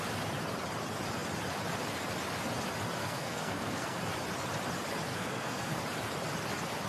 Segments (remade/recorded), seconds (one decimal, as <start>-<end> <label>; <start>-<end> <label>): 0.0-3.0 recorded; 3.0-4.0 remade; 4.0-5.1 recorded; 5.1-5.8 remade; 5.8-6.9 recorded